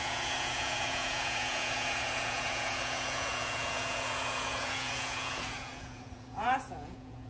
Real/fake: fake